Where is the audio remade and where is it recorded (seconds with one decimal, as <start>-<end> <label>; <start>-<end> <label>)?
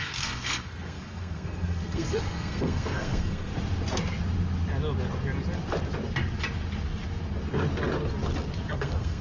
0.0-3.5 remade; 3.5-8.7 recorded; 8.7-9.2 remade